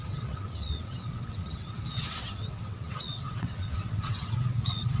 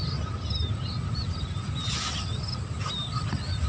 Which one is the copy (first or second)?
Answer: first